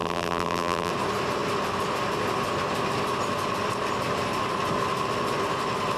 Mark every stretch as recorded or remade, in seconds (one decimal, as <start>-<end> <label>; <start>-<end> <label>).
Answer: 0.0-0.9 remade; 0.9-6.0 recorded